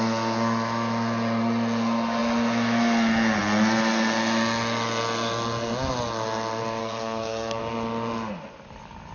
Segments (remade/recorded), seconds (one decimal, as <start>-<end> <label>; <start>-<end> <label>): 0.0-6.8 recorded; 6.8-7.6 remade; 7.6-9.1 recorded